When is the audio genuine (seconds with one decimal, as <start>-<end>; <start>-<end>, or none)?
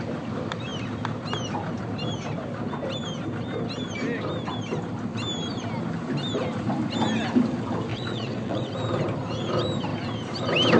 0.0-7.9; 8.7-10.8